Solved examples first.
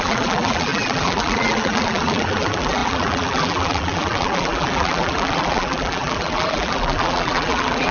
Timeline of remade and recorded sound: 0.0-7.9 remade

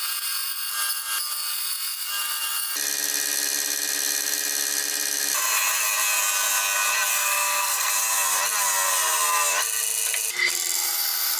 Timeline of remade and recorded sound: 0.0-7.1 recorded; 7.1-7.9 remade; 7.9-11.4 recorded

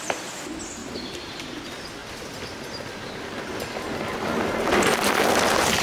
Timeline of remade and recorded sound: 0.0-0.8 recorded; 0.8-1.4 remade; 1.4-5.8 recorded

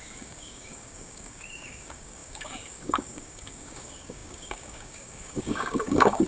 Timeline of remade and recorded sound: 0.0-6.3 remade

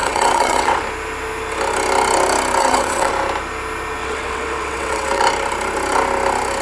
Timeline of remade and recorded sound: 0.0-0.8 remade; 0.8-2.6 recorded; 2.6-3.1 remade; 3.1-4.0 recorded; 4.0-5.2 remade; 5.2-6.6 recorded

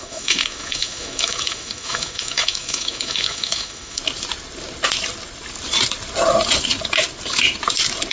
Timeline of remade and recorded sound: 0.0-4.0 remade; 4.0-8.1 recorded

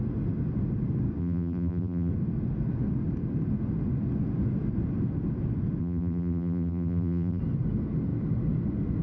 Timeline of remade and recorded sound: 0.0-1.2 recorded; 1.2-2.1 remade; 2.1-5.8 recorded; 5.8-7.4 remade; 7.4-9.0 recorded